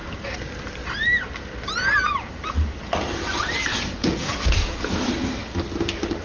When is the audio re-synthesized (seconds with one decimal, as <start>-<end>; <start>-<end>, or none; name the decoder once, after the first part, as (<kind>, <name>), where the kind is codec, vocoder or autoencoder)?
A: 3.7-4.8 (vocoder, Vocos)